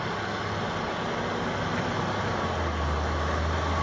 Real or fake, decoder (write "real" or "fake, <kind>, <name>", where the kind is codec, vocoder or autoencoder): real